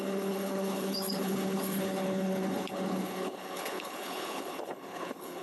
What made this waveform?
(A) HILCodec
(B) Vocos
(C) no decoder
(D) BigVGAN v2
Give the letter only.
A